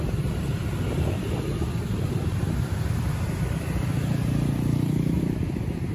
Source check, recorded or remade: remade